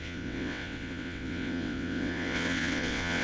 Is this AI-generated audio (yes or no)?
yes